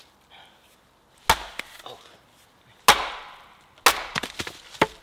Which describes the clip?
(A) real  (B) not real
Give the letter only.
A